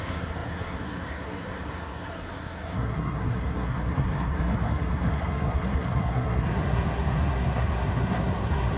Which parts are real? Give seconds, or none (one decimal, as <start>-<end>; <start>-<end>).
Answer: none